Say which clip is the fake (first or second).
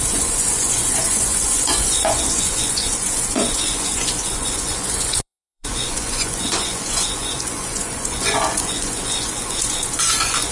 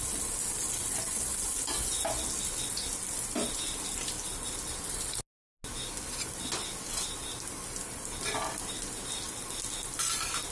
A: first